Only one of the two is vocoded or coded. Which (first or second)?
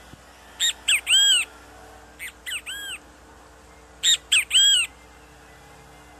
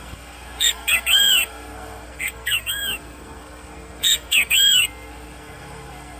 second